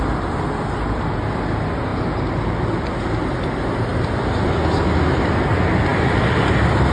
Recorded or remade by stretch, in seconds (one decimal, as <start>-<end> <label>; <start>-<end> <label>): 0.0-6.9 recorded